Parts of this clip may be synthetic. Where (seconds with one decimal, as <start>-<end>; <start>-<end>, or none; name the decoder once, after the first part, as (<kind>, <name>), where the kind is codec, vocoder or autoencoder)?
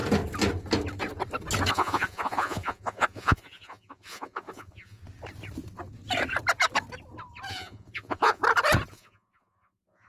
1.7-5.0 (vocoder, Vocos); 7.5-8.4; 8.9-10.1